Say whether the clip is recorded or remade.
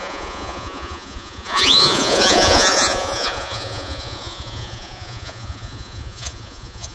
remade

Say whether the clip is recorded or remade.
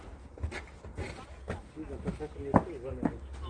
recorded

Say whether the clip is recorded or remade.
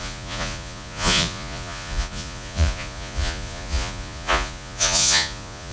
remade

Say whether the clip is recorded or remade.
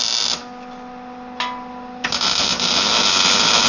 recorded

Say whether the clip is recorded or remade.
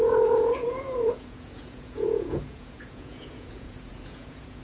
remade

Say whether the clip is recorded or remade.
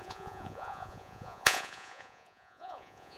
remade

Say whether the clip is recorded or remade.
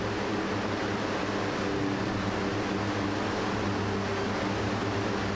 recorded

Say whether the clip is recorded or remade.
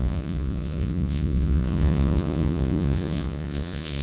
remade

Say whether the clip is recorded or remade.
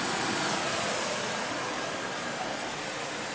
recorded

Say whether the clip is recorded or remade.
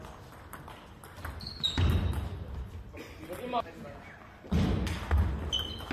recorded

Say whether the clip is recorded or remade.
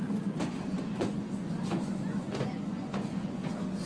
remade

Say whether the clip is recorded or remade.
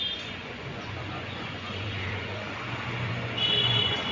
remade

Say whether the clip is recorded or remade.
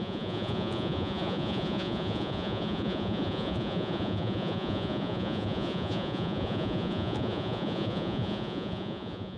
remade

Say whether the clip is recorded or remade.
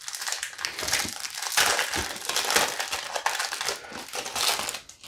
recorded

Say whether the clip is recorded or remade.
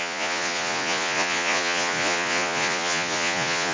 remade